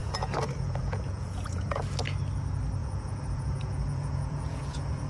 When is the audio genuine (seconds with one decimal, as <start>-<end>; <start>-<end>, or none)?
1.8-2.8